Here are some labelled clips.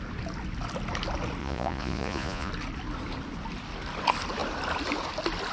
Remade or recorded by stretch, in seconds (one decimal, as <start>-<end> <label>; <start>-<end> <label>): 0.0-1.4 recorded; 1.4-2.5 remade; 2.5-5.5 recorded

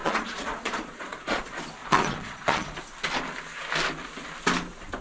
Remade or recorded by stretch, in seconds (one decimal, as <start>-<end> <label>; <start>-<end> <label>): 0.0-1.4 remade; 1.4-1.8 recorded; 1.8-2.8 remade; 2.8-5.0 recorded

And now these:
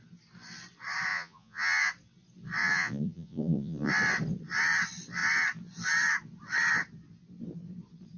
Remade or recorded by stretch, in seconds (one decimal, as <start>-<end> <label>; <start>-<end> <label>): 0.0-1.1 recorded; 1.1-1.9 remade; 1.9-2.6 recorded; 2.6-3.9 remade; 3.9-8.2 recorded